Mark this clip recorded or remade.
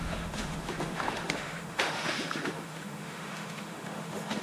remade